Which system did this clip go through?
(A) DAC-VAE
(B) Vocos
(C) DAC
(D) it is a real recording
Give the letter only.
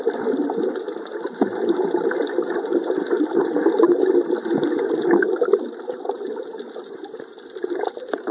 D